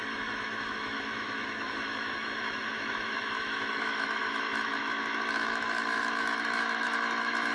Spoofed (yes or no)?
yes